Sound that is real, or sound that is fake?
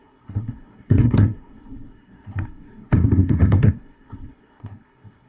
fake